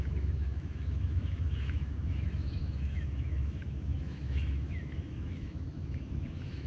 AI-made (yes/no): yes